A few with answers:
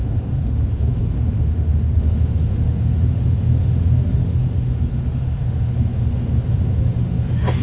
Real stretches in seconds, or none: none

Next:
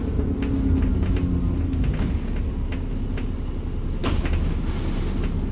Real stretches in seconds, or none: 0.0-5.5

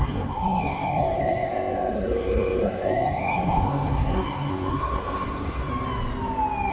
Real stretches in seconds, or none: 5.7-6.7

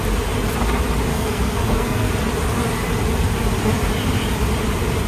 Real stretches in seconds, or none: 0.0-1.1; 2.1-5.1

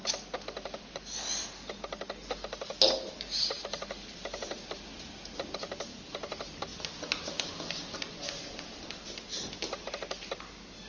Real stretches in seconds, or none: 0.0-10.9